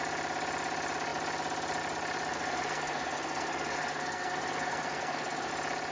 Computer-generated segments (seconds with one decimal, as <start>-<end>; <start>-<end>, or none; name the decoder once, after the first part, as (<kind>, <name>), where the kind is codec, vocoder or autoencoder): 2.3-5.5 (codec, SNAC)